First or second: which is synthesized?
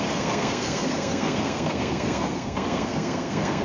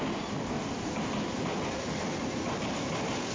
first